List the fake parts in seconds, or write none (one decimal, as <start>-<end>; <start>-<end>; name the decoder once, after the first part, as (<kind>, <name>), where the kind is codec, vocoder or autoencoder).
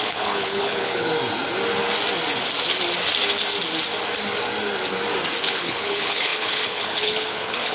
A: 0.0-1.1 (codec, HILCodec); 5.4-7.7